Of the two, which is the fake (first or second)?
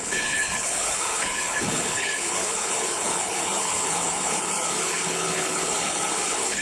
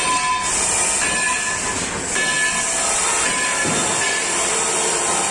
first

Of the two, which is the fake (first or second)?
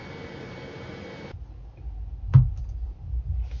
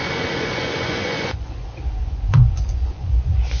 second